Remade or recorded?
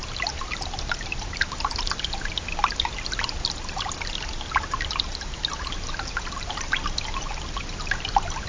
recorded